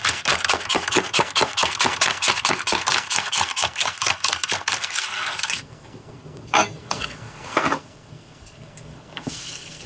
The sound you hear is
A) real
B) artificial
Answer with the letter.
B